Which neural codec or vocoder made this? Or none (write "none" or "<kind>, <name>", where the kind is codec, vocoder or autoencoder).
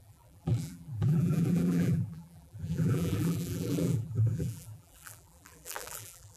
vocoder, BigVGAN v2